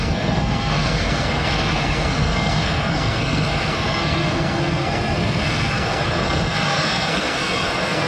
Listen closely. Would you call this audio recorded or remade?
remade